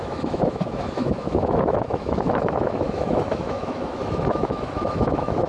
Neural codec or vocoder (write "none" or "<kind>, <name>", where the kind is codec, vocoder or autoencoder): autoencoder, DAC-VAE